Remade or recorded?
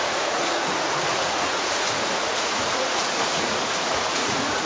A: remade